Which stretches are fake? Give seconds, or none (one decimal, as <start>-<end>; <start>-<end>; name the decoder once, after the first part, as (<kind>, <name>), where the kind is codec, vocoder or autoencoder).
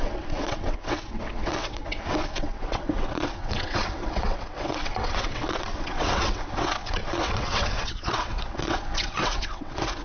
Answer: 0.0-10.0 (vocoder, WaveNeXt)